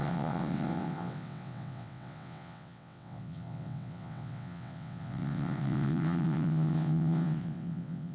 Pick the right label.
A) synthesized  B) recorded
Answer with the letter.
A